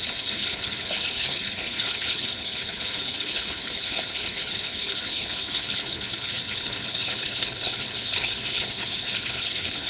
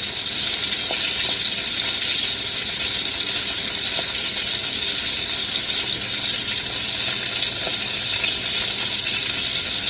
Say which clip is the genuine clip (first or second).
second